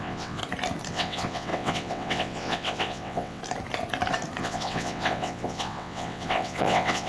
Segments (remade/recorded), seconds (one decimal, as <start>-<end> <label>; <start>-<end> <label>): 0.0-0.4 remade; 0.4-0.9 recorded; 0.9-3.4 remade; 3.4-4.4 recorded; 4.4-7.1 remade